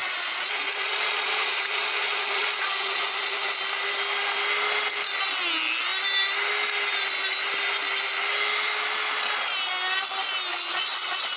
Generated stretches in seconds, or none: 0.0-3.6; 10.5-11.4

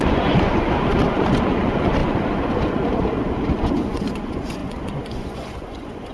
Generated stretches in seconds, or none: 0.0-6.1